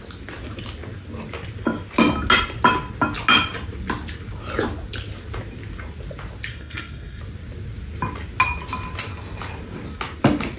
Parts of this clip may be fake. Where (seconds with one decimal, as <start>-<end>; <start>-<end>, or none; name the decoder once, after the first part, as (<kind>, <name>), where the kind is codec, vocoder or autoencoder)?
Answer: 6.5-7.2 (codec, SNAC)